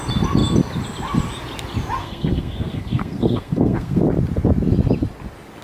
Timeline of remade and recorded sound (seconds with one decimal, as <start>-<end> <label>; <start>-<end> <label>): 0.0-2.0 recorded; 2.0-4.0 remade; 4.0-5.6 recorded